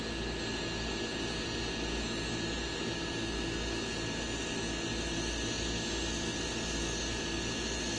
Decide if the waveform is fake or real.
real